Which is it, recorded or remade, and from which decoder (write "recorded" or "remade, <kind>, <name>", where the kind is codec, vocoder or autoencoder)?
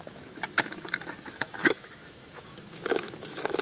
remade, autoencoder, DAC-VAE